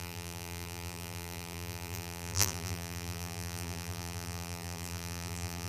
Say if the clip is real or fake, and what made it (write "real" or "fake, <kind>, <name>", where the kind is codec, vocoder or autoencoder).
fake, vocoder, BigVGAN v2